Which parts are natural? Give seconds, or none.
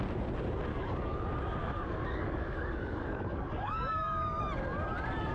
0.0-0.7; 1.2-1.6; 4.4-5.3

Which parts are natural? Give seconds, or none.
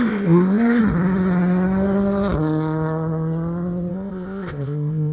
0.8-3.9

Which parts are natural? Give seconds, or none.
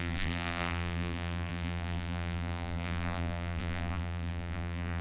none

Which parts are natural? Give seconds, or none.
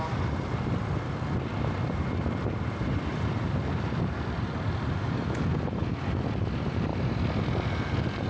6.9-8.3